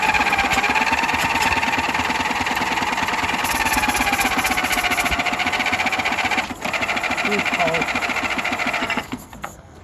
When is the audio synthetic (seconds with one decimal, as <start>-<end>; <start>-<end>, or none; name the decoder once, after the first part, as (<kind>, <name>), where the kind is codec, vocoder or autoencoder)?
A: 8.8-9.8 (codec, SNAC)